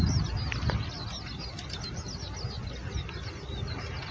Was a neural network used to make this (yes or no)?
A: no